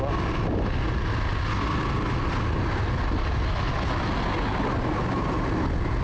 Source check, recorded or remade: recorded